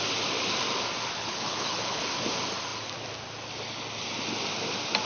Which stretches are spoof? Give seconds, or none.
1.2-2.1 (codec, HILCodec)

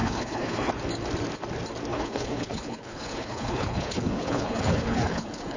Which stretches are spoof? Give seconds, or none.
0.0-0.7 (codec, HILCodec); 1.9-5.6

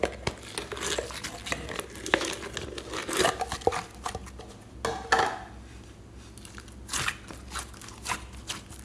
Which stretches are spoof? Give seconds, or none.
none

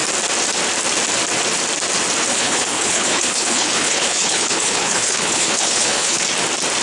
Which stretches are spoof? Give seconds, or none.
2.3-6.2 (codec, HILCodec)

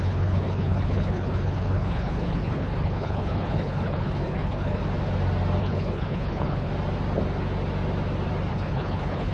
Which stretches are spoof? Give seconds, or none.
0.0-4.8 (codec, HILCodec); 5.6-6.7; 8.5-9.3